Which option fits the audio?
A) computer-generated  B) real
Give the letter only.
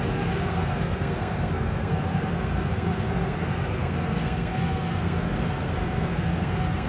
A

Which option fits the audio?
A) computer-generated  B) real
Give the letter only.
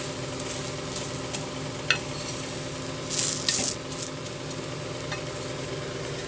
B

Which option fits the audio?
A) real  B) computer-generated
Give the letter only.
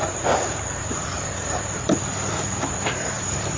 B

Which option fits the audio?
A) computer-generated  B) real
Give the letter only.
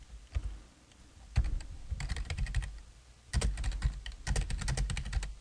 B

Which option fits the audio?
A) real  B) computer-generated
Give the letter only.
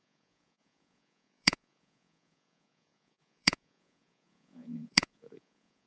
B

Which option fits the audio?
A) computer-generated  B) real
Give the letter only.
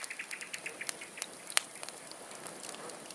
B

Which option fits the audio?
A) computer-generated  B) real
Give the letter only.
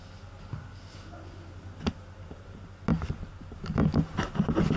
B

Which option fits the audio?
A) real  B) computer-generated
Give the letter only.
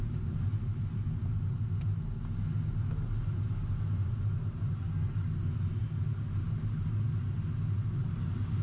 A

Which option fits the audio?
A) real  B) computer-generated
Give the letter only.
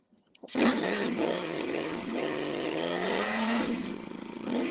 B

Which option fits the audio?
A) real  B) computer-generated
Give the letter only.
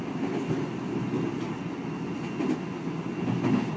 A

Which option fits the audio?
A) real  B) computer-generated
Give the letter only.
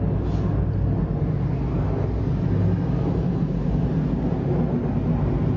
A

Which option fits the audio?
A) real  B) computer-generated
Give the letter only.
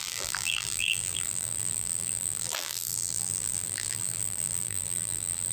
B